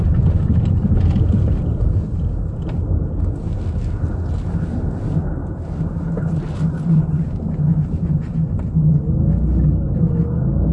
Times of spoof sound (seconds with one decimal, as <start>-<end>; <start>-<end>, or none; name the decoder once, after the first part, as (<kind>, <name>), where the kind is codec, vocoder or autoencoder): none